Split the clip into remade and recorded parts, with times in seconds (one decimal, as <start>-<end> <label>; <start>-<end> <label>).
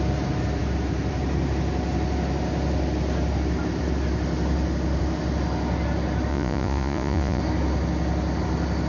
0.0-6.3 recorded; 6.3-7.4 remade; 7.4-8.9 recorded